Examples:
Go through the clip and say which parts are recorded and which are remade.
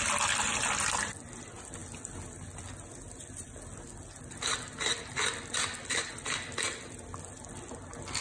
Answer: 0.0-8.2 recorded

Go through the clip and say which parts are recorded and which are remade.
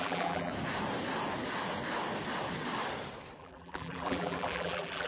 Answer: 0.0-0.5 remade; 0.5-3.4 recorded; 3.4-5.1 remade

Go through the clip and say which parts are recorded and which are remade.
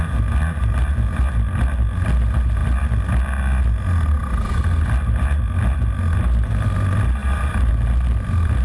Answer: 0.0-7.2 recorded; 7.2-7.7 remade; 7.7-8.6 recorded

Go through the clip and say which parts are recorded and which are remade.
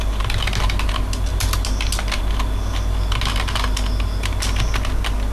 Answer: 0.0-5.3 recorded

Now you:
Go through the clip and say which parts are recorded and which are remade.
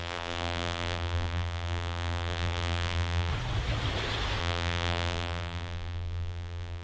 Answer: 0.0-3.3 remade; 3.3-4.4 recorded; 4.4-6.8 remade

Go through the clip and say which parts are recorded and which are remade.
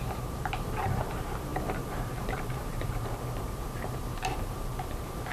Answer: 0.0-5.3 remade